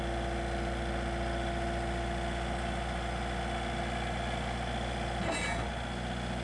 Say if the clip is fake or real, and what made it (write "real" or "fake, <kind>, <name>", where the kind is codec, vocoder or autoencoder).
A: real